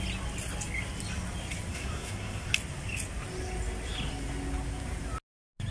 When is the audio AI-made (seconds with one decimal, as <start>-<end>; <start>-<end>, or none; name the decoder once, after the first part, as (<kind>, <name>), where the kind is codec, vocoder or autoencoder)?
1.7-2.5 (codec, SNAC)

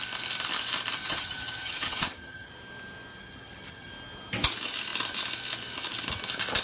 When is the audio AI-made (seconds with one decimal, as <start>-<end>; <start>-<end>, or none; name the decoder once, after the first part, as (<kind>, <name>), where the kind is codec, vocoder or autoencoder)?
1.0-2.5 (vocoder, HiFi-GAN); 3.2-3.9

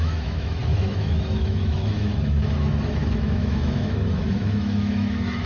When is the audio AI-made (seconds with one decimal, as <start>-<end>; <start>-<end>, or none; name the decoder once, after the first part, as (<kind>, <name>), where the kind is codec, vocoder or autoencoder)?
0.0-5.5 (autoencoder, DAC-VAE)

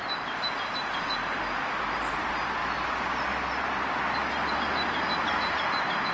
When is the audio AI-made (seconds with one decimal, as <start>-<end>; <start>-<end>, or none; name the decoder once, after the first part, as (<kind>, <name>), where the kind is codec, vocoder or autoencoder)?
none

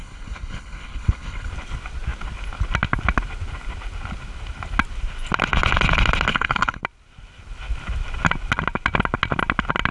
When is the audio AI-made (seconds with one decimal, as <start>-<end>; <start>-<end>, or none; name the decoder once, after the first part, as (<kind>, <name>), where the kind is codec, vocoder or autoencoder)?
0.0-1.5 (codec, HILCodec); 6.3-6.8